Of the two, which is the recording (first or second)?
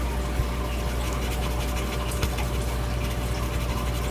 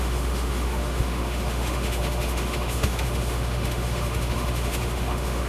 first